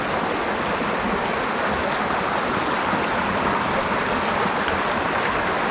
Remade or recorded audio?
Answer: recorded